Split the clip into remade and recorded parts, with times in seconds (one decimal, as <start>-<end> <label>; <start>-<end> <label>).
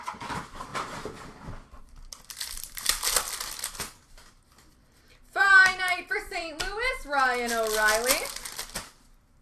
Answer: 0.0-4.7 recorded; 4.7-6.5 remade; 6.5-9.4 recorded